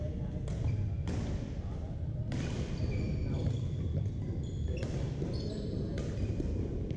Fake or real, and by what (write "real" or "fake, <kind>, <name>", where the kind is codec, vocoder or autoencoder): real